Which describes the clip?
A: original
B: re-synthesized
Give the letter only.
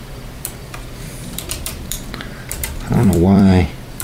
B